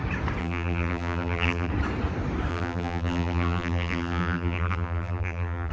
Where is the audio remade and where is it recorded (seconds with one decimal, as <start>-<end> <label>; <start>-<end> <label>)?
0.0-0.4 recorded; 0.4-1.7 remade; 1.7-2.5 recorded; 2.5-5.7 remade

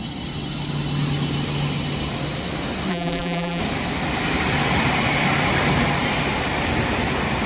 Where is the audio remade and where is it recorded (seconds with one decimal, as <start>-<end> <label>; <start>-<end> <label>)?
0.0-2.9 recorded; 2.9-3.6 remade; 3.6-7.5 recorded

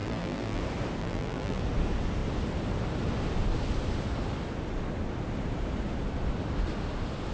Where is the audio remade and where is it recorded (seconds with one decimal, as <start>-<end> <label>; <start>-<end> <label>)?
0.0-0.6 remade; 0.6-1.0 recorded; 1.0-1.6 remade; 1.6-7.3 recorded